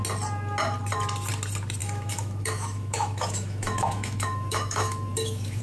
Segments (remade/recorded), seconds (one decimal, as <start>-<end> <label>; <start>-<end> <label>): 0.0-1.8 recorded; 1.8-5.6 remade

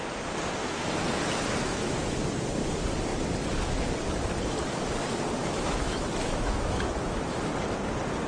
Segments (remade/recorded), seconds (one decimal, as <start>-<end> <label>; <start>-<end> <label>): 0.0-0.6 recorded; 0.6-1.2 remade; 1.2-5.4 recorded; 5.4-7.5 remade; 7.5-8.3 recorded

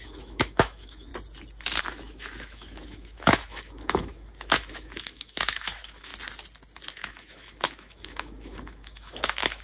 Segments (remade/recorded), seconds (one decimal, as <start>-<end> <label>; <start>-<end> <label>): 0.0-1.1 remade; 1.1-1.8 recorded; 1.8-6.1 remade; 6.1-6.9 recorded; 6.9-9.6 remade